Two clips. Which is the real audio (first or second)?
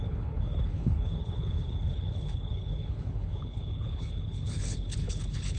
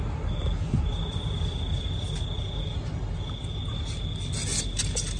second